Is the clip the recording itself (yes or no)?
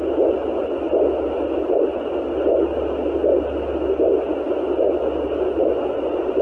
yes